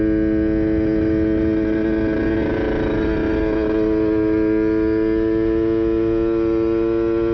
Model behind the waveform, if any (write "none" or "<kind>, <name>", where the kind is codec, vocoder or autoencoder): none